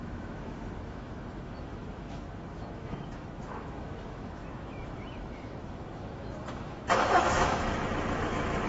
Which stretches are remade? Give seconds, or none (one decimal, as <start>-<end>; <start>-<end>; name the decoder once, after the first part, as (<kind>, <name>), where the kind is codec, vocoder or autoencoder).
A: 0.0-8.7 (autoencoder, DAC-VAE)